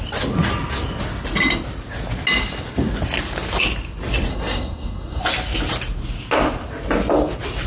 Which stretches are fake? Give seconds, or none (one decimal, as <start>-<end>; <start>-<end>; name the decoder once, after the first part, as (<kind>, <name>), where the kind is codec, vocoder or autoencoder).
4.3-5.2 (codec, SNAC)